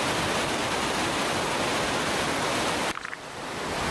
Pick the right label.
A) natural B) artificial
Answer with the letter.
A